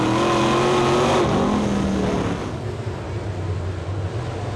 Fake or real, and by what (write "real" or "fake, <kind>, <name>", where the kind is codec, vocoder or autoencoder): real